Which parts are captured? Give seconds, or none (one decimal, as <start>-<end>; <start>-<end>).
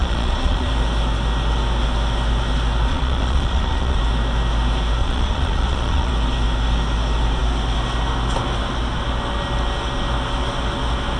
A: 0.7-2.9; 4.0-5.0; 6.1-11.2